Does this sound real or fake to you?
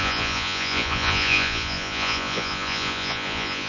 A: fake